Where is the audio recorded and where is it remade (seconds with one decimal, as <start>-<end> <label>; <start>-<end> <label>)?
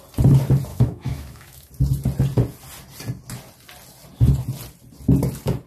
0.0-0.7 recorded; 0.7-1.7 remade; 1.7-5.7 recorded